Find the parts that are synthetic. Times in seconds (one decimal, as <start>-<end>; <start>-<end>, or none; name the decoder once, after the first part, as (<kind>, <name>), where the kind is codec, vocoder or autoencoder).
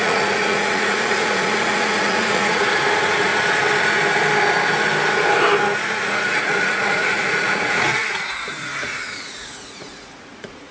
0.0-3.3 (vocoder, Vocos); 5.8-10.7